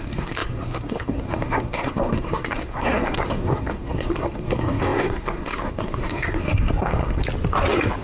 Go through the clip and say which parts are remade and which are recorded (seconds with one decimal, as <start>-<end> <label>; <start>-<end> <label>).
0.0-7.2 remade; 7.2-8.0 recorded